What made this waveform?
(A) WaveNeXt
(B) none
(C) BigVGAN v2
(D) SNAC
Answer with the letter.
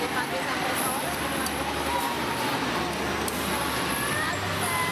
B